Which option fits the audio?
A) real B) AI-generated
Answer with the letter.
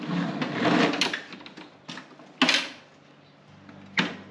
A